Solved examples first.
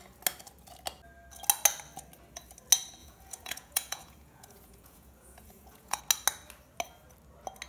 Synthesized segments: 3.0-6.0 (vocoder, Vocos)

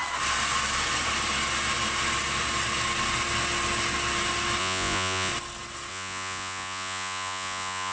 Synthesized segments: 4.6-5.3 (vocoder, Vocos); 5.9-7.9